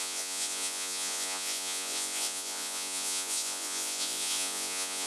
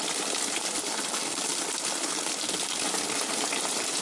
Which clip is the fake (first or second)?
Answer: first